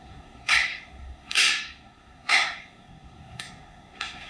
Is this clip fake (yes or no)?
yes